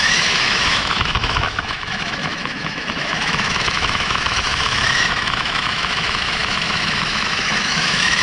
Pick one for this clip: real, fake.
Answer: fake